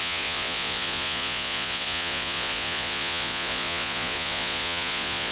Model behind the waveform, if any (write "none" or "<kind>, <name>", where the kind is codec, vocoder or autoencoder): vocoder, Vocos